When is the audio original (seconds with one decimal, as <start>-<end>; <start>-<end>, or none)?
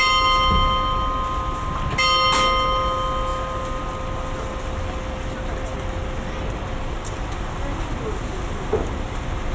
0.0-9.5